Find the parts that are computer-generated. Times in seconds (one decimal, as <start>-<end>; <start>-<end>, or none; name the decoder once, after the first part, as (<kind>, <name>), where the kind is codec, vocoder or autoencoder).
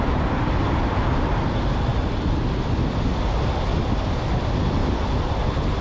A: none